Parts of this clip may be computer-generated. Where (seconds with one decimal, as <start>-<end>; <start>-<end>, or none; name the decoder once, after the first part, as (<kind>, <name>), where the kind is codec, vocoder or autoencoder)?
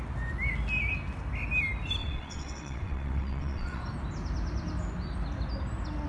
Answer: 2.0-3.8 (vocoder, WaveNeXt)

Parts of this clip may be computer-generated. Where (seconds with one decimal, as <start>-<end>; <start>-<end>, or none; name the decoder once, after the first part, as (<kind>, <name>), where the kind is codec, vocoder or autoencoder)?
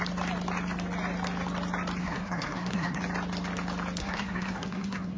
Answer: 2.0-3.0 (codec, SNAC); 4.0-5.2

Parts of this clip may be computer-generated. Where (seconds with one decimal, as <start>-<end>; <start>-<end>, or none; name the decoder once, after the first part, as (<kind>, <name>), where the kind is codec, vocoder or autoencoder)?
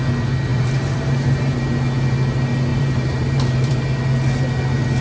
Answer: 0.5-1.6 (vocoder, BigVGAN v2); 2.7-3.8